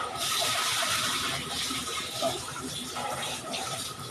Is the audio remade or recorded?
remade